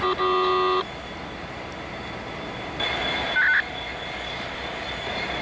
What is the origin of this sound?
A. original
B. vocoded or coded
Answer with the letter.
A